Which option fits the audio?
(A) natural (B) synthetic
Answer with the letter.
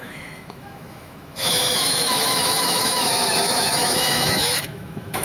B